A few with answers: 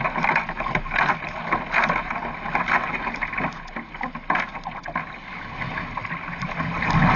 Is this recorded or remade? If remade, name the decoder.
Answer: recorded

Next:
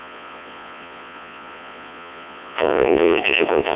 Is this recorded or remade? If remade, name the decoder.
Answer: remade, vocoder, Vocos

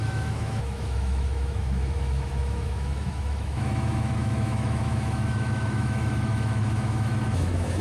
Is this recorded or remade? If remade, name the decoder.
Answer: remade, autoencoder, DAC-VAE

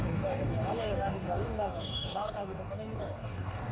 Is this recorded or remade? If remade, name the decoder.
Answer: remade, codec, DAC